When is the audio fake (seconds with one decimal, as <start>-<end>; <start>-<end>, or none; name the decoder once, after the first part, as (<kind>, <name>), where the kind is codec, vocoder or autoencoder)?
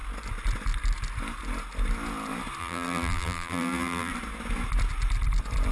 2.6-4.1 (vocoder, BigVGAN v2)